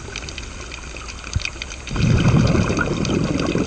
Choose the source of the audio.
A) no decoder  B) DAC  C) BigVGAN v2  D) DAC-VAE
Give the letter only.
A